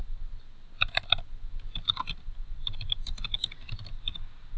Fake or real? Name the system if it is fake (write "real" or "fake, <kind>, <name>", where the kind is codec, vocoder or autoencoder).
real